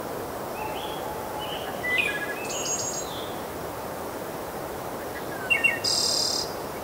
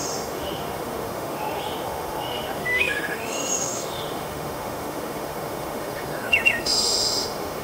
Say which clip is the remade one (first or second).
second